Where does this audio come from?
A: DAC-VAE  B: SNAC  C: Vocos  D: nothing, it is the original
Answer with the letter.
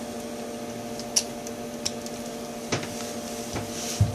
D